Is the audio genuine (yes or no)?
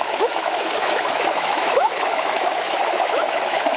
no